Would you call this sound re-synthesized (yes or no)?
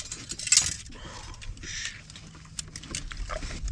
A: no